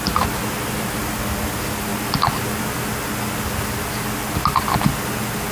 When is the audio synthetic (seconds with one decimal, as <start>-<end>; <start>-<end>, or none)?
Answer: none